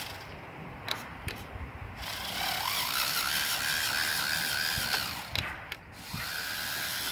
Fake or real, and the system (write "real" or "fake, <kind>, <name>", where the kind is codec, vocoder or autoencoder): fake, vocoder, BigVGAN v2